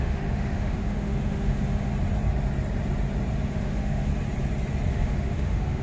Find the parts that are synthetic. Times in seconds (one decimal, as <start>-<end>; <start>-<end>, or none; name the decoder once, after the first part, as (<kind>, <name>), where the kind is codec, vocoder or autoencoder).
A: 0.0-1.9 (autoencoder, DAC-VAE); 3.5-4.1; 4.9-5.8